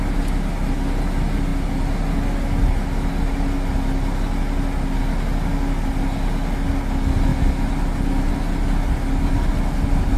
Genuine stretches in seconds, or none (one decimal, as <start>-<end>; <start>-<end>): 0.0-10.2